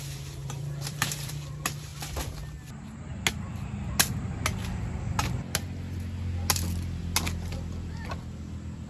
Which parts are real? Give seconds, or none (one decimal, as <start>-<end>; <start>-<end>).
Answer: 0.0-0.4; 1.3-8.9